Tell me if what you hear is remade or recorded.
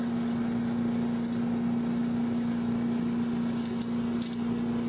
recorded